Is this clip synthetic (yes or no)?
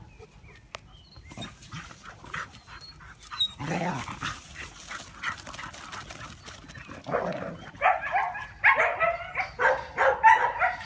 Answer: no